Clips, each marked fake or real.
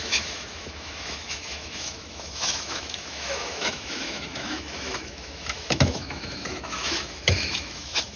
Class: fake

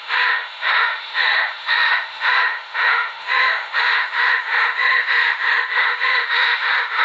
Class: fake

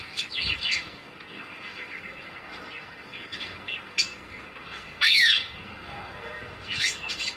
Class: fake